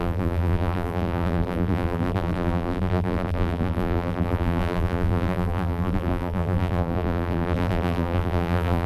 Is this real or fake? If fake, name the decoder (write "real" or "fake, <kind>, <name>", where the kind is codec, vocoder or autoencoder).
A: fake, vocoder, BigVGAN v2